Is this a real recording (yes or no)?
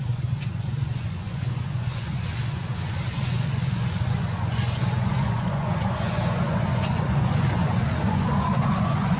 no